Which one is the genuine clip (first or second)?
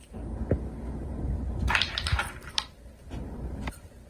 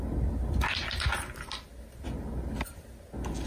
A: second